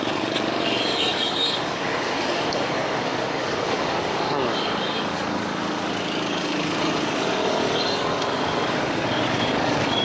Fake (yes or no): yes